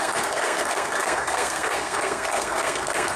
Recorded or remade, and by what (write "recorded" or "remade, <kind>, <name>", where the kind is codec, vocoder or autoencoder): remade, codec, SNAC